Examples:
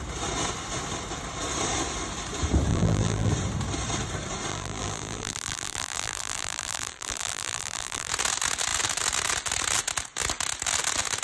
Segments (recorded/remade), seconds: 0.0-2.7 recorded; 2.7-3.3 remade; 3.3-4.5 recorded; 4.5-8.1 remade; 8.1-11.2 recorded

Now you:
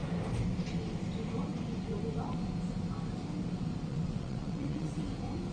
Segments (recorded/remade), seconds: 0.0-3.9 recorded; 3.9-5.1 remade; 5.1-5.5 recorded

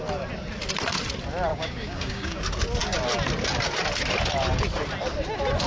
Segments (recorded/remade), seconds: 0.0-1.5 recorded; 1.5-2.4 remade; 2.4-5.7 recorded

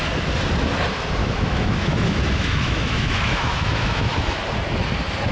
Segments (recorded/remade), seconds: 0.0-1.2 recorded; 1.2-4.4 remade; 4.4-5.3 recorded